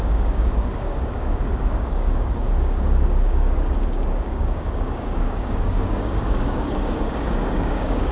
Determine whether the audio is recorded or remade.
remade